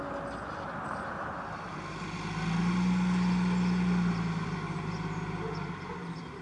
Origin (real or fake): real